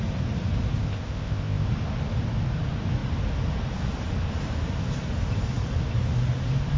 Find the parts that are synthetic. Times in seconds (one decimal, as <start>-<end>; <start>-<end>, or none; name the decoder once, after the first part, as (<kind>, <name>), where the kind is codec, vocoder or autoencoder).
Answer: 0.8-1.7 (codec, ZipCodec)